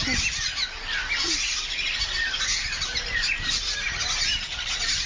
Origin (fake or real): real